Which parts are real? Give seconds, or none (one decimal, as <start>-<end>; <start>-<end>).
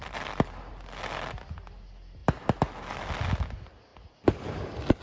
0.0-5.0